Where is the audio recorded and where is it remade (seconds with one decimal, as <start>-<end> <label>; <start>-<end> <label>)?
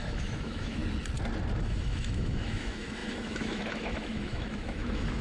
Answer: 0.0-0.8 remade; 0.8-1.6 recorded; 1.6-5.2 remade